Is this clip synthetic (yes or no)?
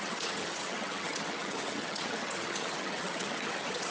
yes